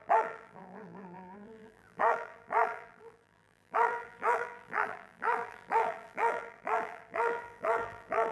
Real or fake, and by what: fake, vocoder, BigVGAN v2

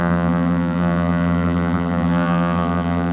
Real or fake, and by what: fake, vocoder, BigVGAN v2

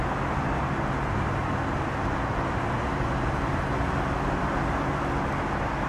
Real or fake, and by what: real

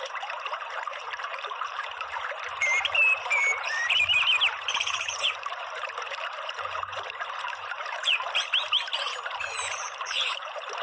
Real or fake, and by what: fake, vocoder, BigVGAN v2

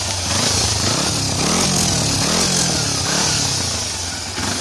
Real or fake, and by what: real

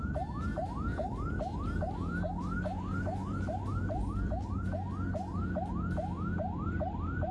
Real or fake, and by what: real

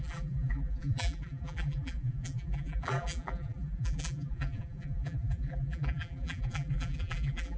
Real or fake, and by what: fake, vocoder, BigVGAN v2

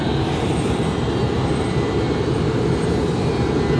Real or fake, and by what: fake, vocoder, BigVGAN v2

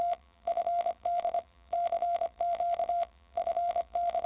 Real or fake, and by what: fake, vocoder, BigVGAN v2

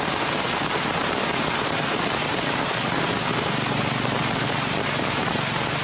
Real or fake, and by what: fake, vocoder, BigVGAN v2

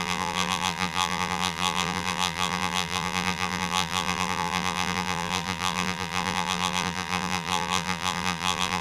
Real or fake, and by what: fake, vocoder, BigVGAN v2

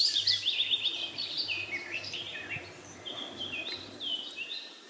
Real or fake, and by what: fake, vocoder, BigVGAN v2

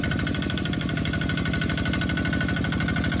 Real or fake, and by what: real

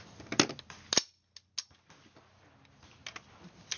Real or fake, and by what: real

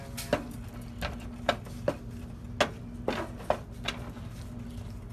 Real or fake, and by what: real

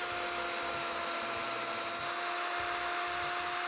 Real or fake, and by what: fake, vocoder, BigVGAN v2